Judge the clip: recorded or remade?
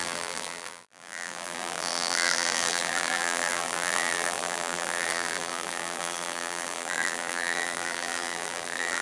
remade